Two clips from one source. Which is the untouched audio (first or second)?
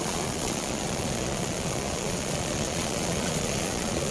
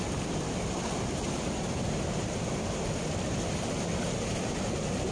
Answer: second